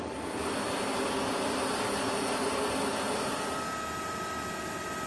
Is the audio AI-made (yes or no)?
no